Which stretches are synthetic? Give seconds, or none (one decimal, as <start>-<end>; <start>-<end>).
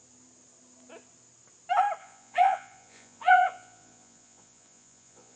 2.0-5.4